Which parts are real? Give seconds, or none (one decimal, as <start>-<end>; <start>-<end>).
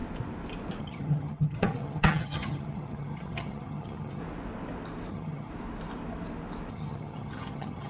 0.0-0.8; 4.2-5.1; 5.5-6.7